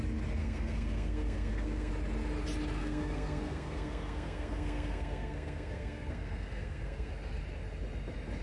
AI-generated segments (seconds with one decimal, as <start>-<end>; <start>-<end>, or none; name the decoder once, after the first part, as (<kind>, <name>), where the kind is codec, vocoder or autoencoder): 0.4-1.9 (codec, SNAC); 2.8-7.1

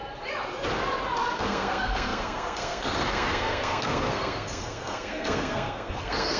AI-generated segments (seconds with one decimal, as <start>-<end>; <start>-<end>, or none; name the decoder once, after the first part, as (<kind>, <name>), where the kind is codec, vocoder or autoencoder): 1.4-6.4 (codec, SNAC)

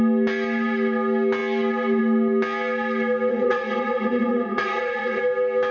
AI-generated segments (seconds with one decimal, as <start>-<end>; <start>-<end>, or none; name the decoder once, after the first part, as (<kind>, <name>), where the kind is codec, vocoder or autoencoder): 3.3-5.2 (vocoder, WaveNeXt)

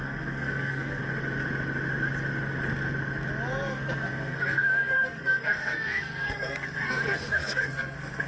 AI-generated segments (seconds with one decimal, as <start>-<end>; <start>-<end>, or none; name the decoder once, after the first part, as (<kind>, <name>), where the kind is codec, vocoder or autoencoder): 0.0-1.0 (codec, SNAC); 3.5-8.3